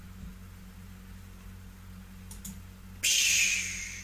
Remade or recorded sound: recorded